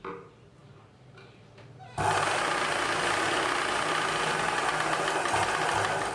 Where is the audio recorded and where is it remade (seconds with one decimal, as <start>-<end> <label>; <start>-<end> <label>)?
0.0-6.1 recorded